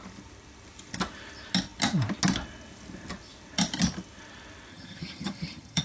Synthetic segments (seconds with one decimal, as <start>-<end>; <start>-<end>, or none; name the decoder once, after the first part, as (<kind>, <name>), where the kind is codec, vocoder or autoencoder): 4.7-5.8 (vocoder, HiFi-GAN)